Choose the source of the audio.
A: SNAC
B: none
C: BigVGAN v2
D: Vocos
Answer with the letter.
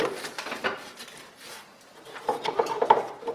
B